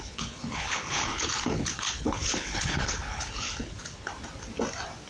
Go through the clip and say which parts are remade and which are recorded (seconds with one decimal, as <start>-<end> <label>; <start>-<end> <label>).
0.0-4.1 remade; 4.1-5.1 recorded